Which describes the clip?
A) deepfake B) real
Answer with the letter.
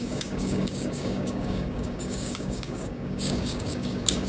A